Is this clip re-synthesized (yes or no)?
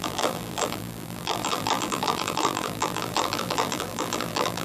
yes